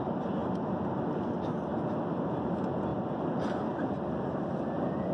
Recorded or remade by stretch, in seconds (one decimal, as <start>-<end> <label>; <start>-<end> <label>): 0.0-5.1 recorded